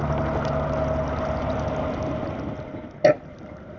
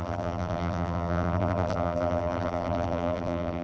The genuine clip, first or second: first